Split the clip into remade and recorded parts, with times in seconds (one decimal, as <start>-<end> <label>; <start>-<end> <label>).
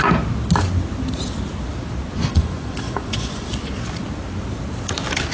0.0-2.3 recorded; 2.3-3.5 remade; 3.5-5.3 recorded